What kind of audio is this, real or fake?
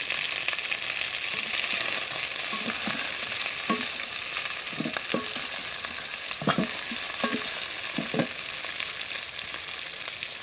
real